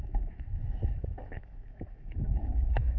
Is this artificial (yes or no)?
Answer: yes